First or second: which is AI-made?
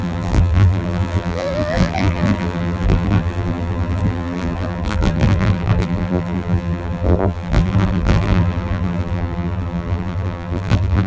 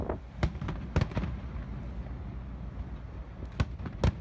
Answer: first